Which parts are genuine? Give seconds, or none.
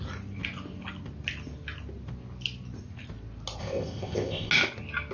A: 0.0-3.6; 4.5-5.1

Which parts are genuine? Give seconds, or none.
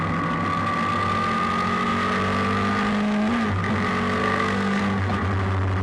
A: 0.0-4.2; 4.8-5.8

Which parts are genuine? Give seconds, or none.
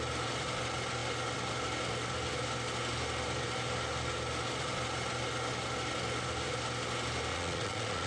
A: 0.0-7.3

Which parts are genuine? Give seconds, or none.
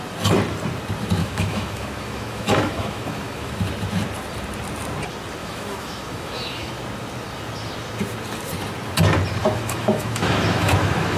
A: 0.0-1.2; 3.6-5.4; 6.7-9.4